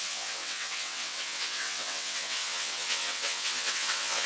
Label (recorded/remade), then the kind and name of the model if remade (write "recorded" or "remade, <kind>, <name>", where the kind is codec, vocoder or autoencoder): remade, vocoder, WaveNeXt